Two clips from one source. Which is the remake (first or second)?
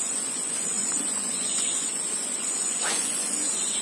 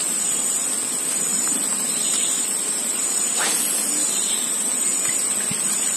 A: first